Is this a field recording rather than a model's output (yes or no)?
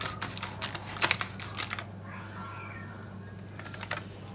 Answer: yes